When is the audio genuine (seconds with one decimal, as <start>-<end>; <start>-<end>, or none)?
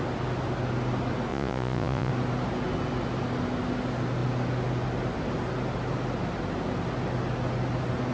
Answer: 0.0-1.3; 2.1-8.1